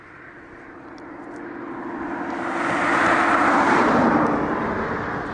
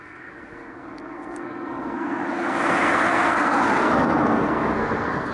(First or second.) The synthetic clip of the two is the second